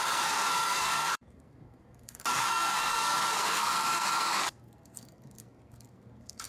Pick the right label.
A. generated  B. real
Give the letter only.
A